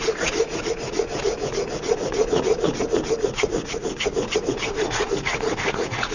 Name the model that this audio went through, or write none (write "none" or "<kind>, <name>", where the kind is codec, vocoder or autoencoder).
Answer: vocoder, Vocos